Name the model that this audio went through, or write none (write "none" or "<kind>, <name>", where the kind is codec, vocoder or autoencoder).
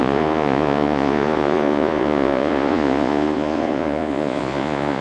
vocoder, Vocos